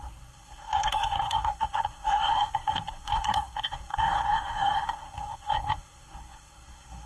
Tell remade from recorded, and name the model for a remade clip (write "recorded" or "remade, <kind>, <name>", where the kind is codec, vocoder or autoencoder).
remade, codec, SNAC